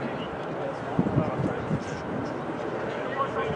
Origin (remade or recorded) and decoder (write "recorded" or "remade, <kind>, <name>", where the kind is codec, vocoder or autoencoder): recorded